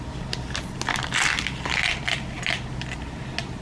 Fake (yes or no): no